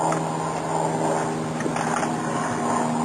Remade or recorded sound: recorded